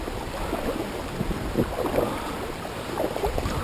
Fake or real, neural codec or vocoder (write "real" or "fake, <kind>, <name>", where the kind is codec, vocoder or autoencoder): real